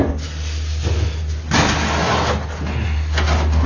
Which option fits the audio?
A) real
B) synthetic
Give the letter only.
A